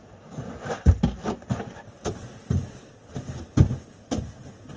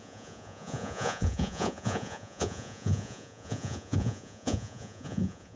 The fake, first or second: second